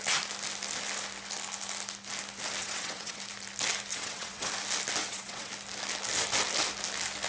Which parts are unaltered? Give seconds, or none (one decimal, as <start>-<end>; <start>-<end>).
0.0-2.6; 3.2-3.9; 4.5-5.0; 5.5-7.3

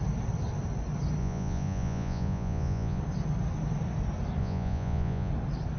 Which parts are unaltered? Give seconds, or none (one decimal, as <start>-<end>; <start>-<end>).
0.0-1.2; 3.0-4.4; 5.3-5.8